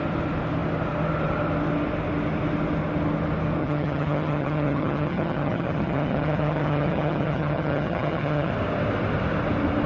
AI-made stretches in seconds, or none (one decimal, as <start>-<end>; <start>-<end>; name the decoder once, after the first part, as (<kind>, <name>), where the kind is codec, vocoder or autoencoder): 3.6-8.5 (vocoder, HiFi-GAN)